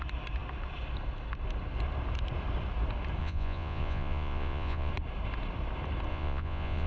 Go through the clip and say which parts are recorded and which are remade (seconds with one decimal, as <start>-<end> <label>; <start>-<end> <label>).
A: 0.0-3.2 recorded; 3.2-4.9 remade; 4.9-6.1 recorded; 6.1-6.9 remade